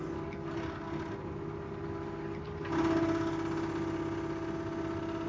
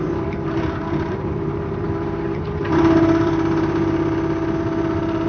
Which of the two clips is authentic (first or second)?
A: first